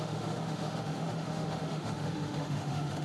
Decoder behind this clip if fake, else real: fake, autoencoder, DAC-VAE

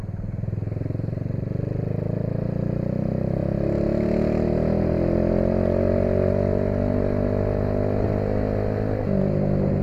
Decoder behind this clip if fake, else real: real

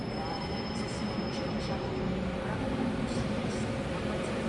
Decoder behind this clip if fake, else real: real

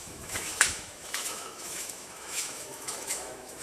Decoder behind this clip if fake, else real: fake, autoencoder, DAC-VAE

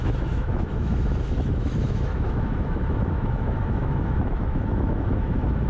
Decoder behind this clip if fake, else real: fake, autoencoder, DAC-VAE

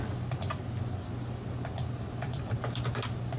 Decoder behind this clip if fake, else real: real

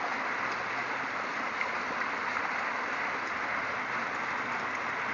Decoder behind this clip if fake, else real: real